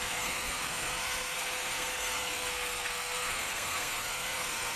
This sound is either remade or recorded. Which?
remade